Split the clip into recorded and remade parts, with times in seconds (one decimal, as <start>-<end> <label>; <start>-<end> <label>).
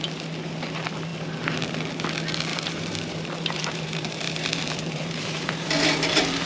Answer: 0.0-2.5 recorded; 2.5-6.5 remade